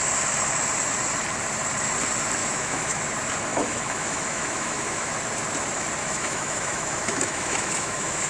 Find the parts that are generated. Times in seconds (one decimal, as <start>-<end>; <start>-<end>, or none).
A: 2.4-3.0; 3.5-5.1; 6.0-8.3